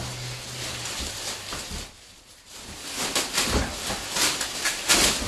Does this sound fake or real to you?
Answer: real